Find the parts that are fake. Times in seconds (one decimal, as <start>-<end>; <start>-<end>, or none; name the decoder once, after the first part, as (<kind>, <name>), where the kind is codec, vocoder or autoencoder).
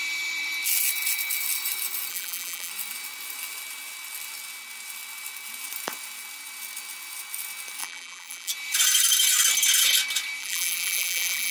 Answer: 2.1-2.7 (vocoder, BigVGAN v2); 7.8-8.5; 10.4-11.5